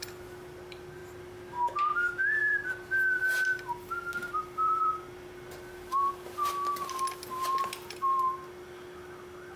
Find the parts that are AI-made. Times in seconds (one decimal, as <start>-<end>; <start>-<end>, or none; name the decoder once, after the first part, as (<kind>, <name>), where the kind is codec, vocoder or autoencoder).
2.4-3.2 (vocoder, BigVGAN v2); 4.2-6.1